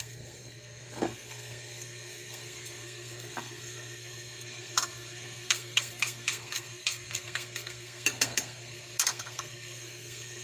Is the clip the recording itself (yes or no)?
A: no